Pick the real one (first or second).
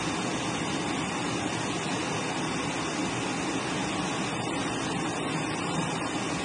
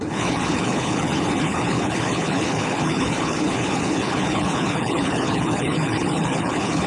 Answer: first